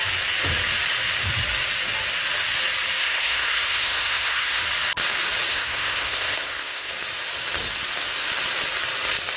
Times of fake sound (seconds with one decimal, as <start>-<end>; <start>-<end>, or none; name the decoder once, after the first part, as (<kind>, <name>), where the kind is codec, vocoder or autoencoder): 3.0-4.6 (codec, SNAC); 5.5-6.9